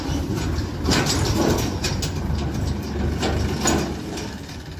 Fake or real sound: real